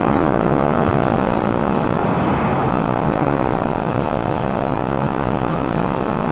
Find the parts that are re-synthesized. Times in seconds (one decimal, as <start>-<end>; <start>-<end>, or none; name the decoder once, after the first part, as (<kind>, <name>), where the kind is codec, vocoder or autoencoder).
0.0-2.0 (vocoder, Vocos); 2.7-6.3